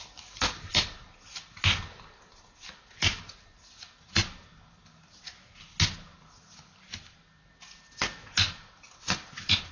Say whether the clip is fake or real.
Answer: real